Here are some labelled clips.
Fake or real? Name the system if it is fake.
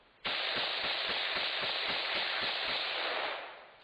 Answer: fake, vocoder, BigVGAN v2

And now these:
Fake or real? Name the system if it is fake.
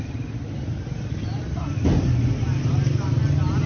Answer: real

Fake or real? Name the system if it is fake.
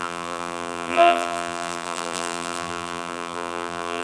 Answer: fake, vocoder, BigVGAN v2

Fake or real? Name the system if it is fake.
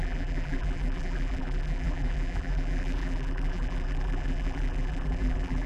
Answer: fake, vocoder, BigVGAN v2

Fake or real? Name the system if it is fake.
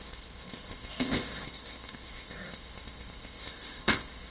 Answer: fake, codec, ZipCodec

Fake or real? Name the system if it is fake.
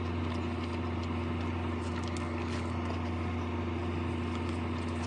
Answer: real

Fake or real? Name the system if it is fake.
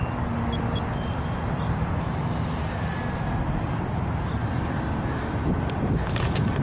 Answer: real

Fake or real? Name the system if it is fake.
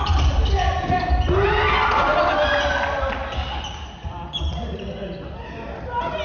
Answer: real